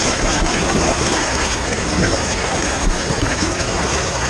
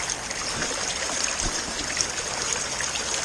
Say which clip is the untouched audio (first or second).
second